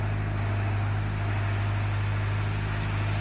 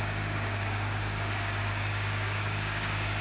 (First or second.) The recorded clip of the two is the first